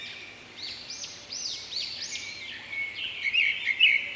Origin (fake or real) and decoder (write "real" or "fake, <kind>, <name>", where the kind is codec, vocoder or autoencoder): real